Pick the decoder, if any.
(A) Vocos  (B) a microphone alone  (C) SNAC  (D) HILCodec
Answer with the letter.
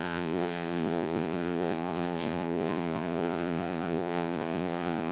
A